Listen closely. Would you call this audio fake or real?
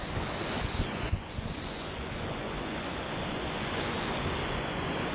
fake